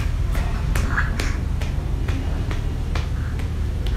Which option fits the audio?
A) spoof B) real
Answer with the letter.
B